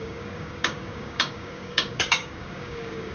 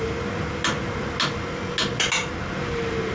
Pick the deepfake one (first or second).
first